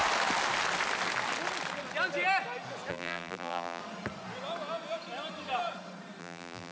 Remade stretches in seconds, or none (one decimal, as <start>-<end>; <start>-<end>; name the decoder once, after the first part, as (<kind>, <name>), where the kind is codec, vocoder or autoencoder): 2.9-3.8 (vocoder, BigVGAN v2); 6.2-6.7